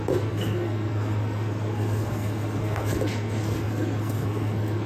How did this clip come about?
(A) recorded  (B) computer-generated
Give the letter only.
B